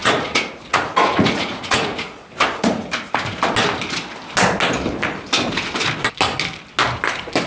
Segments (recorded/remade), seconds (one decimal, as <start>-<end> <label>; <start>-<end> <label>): 0.0-2.9 remade; 2.9-7.5 recorded